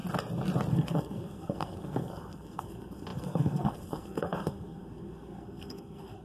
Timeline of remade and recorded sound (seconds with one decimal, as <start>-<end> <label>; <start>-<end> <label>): 0.0-0.7 recorded; 0.7-6.2 remade